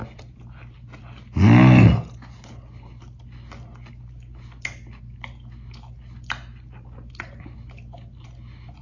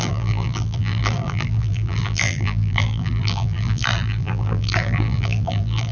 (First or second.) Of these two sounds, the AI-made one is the second